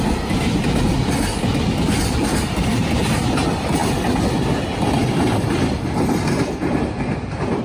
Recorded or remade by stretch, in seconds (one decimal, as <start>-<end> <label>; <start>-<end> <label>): 0.0-7.6 recorded

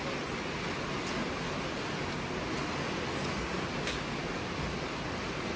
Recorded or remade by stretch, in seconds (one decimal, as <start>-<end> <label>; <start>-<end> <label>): 0.0-5.6 recorded

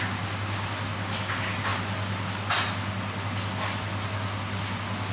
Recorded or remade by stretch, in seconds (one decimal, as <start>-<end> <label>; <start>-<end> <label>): 0.0-5.1 recorded

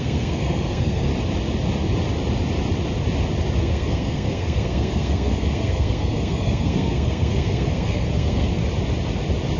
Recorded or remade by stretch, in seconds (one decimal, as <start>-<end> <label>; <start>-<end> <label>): 0.0-1.1 remade; 1.1-3.6 recorded; 3.6-8.6 remade; 8.6-9.6 recorded

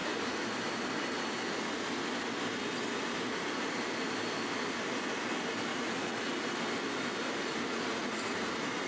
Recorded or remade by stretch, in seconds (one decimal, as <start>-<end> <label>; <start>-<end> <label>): 0.0-5.7 recorded; 5.7-6.3 remade; 6.3-7.7 recorded; 7.7-8.5 remade; 8.5-8.9 recorded

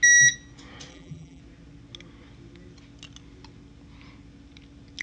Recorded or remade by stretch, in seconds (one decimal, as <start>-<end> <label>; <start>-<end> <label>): 0.0-0.9 recorded; 0.9-1.4 remade; 1.4-5.0 recorded

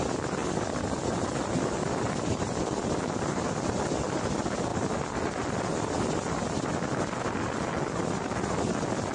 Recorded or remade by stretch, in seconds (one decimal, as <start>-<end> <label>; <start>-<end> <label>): 0.0-9.1 recorded